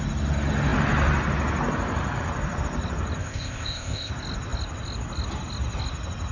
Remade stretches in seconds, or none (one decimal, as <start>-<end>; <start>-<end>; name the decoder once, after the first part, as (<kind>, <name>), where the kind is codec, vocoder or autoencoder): 3.2-4.1 (codec, ZipCodec)